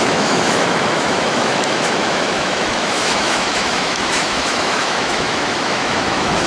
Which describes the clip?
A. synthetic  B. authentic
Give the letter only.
A